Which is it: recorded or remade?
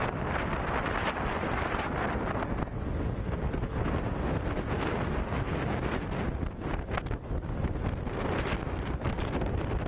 recorded